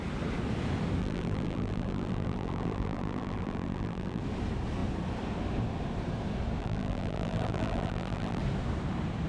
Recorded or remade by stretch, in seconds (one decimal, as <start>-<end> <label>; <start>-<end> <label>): 0.0-1.0 recorded; 1.0-4.2 remade; 4.2-6.6 recorded; 6.6-8.4 remade; 8.4-9.3 recorded